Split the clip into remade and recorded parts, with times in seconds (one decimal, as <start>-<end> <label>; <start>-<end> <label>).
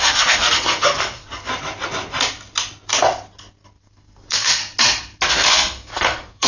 0.0-1.5 remade; 1.5-3.8 recorded; 3.8-4.6 remade; 4.6-5.3 recorded; 5.3-6.5 remade